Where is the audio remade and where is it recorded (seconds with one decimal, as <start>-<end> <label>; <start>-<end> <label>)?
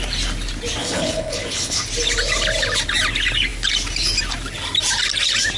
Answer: 0.0-0.8 recorded; 0.8-1.8 remade; 1.8-5.6 recorded